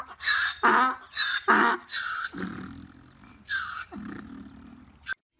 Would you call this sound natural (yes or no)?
yes